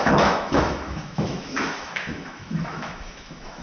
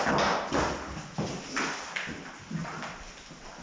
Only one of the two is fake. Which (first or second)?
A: first